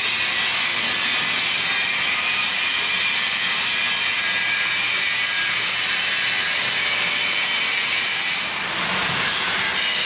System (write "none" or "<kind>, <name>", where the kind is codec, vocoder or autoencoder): none